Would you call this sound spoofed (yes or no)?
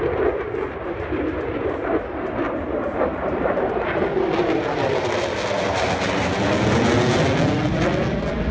no